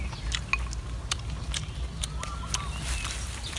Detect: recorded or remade recorded